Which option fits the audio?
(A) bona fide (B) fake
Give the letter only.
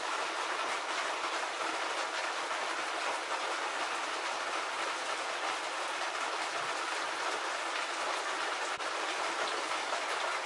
A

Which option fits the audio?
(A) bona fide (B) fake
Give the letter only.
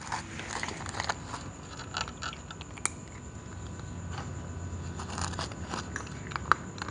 A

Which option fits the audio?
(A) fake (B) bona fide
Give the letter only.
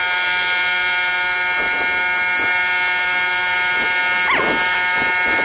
B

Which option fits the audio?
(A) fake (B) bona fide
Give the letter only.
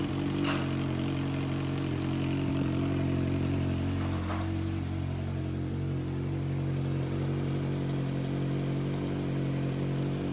B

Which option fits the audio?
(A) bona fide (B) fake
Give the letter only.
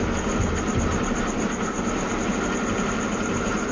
A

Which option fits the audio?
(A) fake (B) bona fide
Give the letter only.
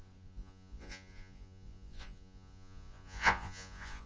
A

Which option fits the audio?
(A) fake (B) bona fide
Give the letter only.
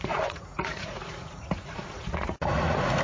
A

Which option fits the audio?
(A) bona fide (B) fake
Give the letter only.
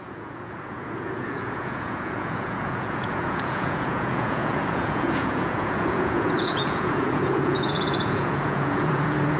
B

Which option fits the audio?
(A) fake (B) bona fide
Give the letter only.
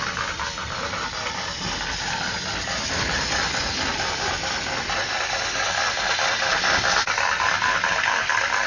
B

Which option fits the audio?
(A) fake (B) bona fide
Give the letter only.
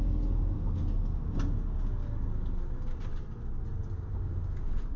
B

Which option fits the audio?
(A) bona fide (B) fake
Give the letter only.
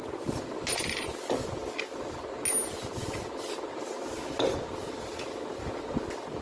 A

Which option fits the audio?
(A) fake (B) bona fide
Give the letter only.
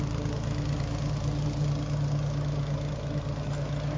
B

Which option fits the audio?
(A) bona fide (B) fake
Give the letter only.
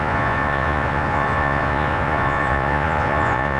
B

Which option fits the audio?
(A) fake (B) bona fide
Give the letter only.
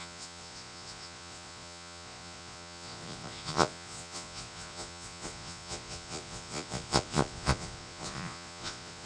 A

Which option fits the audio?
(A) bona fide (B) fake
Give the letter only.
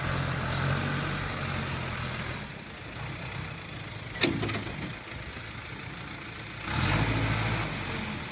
A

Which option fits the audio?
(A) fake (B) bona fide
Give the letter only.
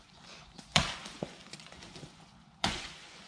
A